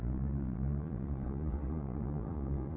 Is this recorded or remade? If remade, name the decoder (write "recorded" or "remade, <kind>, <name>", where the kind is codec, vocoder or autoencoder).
remade, vocoder, Vocos